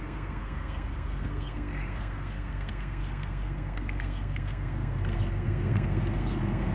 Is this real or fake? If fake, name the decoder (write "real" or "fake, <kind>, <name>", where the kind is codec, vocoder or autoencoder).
fake, codec, SNAC